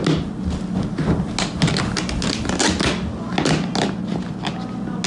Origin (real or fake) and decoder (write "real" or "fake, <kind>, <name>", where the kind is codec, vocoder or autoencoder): real